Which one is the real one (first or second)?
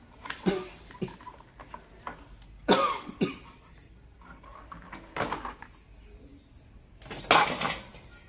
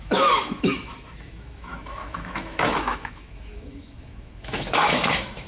first